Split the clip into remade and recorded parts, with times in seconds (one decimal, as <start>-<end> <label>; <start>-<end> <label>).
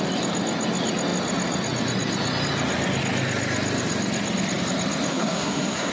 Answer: 0.0-5.1 recorded; 5.1-5.9 remade